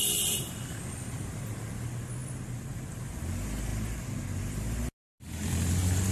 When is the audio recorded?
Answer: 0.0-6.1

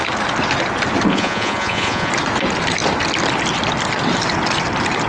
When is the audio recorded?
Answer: 0.0-1.1; 2.1-5.1

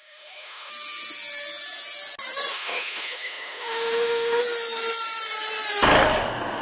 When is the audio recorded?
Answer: 0.7-2.5; 4.4-6.6

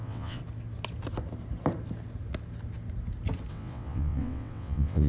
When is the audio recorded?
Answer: 0.4-3.5

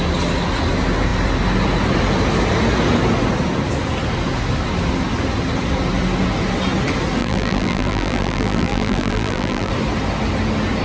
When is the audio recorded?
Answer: 0.0-7.2; 9.7-10.8

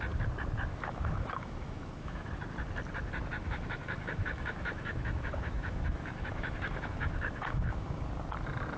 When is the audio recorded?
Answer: 0.0-0.7; 2.3-3.4; 8.1-8.8

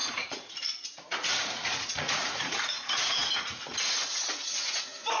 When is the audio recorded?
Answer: none

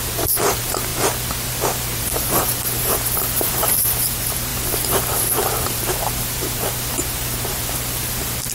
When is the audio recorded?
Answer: 0.9-1.5